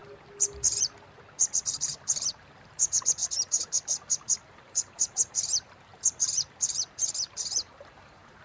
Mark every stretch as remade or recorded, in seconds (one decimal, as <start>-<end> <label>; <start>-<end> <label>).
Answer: 0.0-1.7 recorded; 1.7-8.4 remade